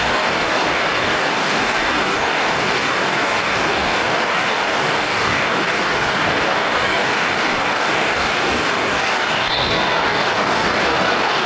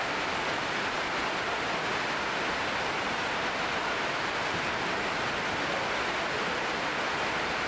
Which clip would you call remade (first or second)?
first